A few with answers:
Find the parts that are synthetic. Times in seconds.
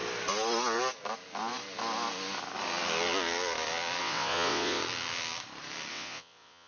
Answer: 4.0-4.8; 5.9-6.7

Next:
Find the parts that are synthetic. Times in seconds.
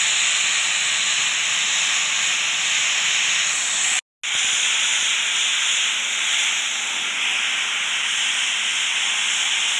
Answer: none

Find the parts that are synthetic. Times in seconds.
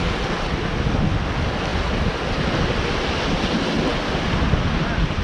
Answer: none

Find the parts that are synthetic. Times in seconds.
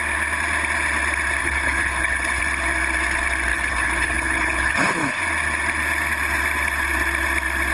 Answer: 1.4-2.4; 3.5-5.2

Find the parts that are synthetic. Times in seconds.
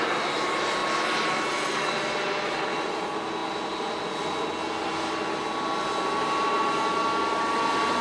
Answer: none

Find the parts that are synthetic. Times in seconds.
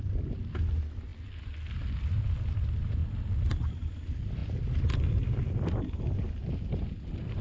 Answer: 3.0-3.9; 4.4-6.6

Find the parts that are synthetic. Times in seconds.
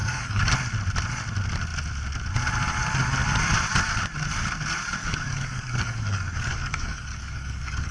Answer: 0.0-0.5; 5.0-7.9